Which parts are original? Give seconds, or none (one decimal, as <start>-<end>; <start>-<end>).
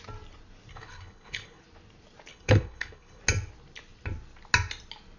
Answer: 0.0-0.7; 1.6-2.3; 3.2-5.2